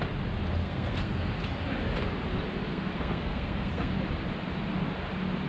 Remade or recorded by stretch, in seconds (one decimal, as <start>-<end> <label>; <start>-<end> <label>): 0.0-0.6 recorded; 0.6-1.3 remade; 1.3-2.7 recorded; 2.7-3.9 remade; 3.9-5.5 recorded

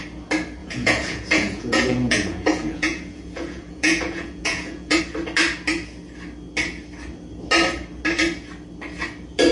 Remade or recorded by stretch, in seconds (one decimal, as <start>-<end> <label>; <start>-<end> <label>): 0.0-0.6 recorded; 0.6-5.0 remade; 5.0-9.5 recorded

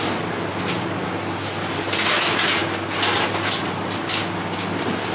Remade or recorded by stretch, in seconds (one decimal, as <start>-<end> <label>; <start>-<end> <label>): 0.0-5.1 recorded

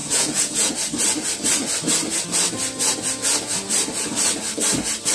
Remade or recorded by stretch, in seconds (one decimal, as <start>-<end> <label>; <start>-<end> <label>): 0.0-0.7 remade; 0.7-5.1 recorded